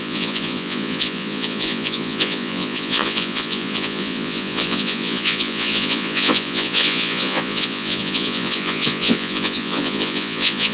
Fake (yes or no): yes